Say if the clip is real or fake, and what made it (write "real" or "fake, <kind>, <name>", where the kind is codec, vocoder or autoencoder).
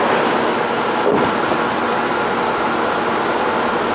real